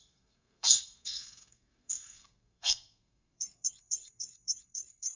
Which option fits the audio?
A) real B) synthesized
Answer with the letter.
B